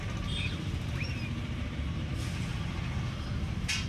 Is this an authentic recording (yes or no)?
yes